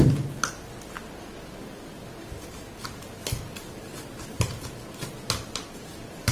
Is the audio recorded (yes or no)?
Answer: yes